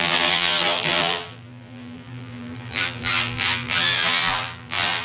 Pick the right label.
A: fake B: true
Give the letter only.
A